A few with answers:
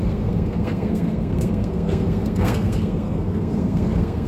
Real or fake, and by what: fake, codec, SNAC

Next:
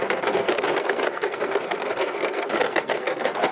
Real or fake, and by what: fake, codec, SNAC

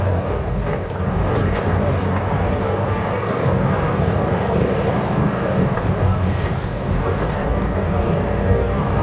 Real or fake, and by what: fake, codec, DAC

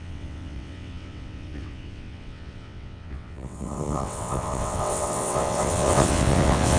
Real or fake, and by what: fake, vocoder, WaveNeXt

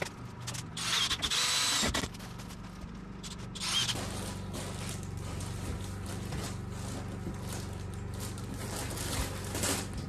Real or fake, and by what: real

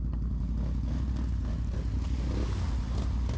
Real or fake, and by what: real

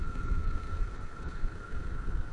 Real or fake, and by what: fake, codec, SNAC